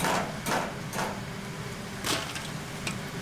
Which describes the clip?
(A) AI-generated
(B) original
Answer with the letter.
B